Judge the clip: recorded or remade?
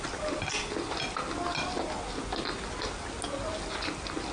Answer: recorded